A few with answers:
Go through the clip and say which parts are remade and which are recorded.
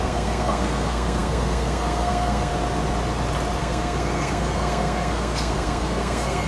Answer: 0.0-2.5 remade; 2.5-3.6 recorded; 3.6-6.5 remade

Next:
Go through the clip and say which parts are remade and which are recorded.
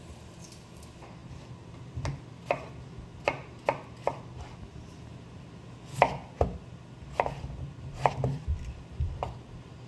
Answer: 0.0-9.9 recorded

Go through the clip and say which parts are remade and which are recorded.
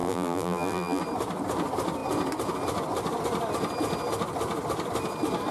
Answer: 0.0-1.0 remade; 1.0-5.5 recorded